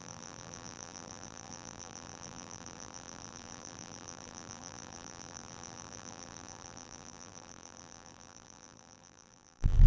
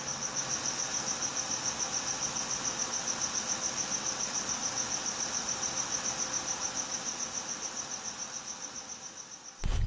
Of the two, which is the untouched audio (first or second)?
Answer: second